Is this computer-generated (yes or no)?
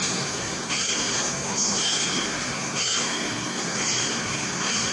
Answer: yes